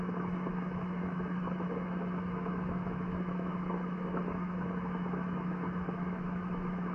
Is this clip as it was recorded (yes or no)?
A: no